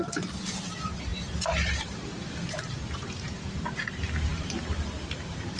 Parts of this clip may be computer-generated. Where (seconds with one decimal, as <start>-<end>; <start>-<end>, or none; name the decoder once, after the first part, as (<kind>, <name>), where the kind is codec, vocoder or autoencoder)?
0.0-5.6 (vocoder, BigVGAN v2)